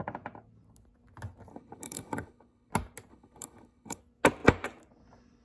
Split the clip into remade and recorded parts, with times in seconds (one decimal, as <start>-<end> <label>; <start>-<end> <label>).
0.0-1.5 recorded; 1.5-2.7 remade; 2.7-3.1 recorded; 3.1-4.0 remade; 4.0-5.4 recorded

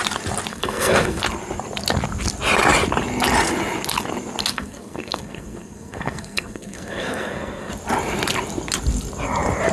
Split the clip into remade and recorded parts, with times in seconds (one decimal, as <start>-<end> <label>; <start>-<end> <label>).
0.0-0.5 recorded; 0.5-1.2 remade; 1.2-4.5 recorded; 4.5-7.7 remade; 7.7-9.7 recorded